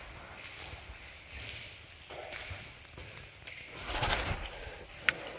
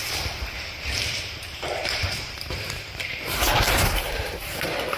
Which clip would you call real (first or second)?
first